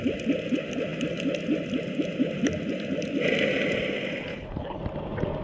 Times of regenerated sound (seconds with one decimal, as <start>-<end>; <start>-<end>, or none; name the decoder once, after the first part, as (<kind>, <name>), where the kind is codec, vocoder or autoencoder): 4.3-4.8 (codec, HILCodec)